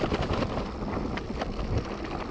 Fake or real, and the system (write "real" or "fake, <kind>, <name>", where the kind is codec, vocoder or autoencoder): real